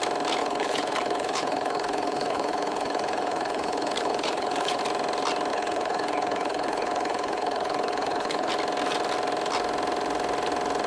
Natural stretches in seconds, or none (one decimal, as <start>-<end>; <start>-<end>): 0.0-0.4; 4.8-5.5; 8.5-10.9